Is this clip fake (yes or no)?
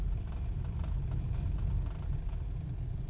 no